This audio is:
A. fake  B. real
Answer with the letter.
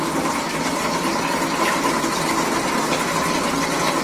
B